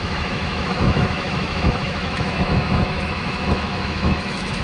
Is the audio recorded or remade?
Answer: remade